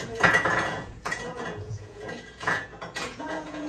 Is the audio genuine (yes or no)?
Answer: no